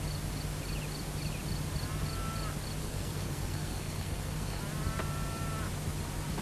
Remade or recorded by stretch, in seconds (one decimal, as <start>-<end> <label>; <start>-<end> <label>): 0.0-2.8 recorded; 2.8-4.6 remade; 4.6-6.4 recorded